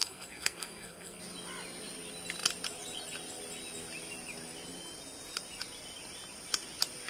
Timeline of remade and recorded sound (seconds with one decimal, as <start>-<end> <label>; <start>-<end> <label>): 0.0-1.2 remade; 1.2-7.1 recorded

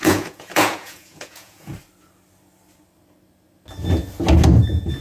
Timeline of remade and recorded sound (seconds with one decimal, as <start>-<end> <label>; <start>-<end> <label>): 0.0-1.7 remade; 1.7-5.0 recorded